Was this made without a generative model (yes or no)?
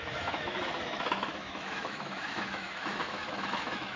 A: no